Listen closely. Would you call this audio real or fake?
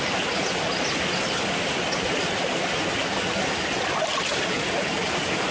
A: real